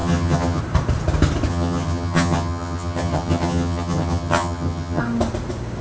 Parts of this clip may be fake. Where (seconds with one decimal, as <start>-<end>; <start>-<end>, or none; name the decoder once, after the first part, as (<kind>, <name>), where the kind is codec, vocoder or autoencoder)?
0.0-0.6 (vocoder, HiFi-GAN); 1.5-5.0